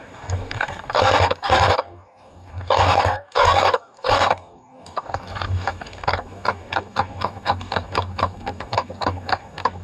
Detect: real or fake fake